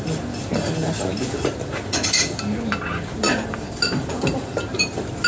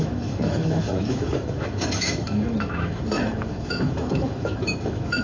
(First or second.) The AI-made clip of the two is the second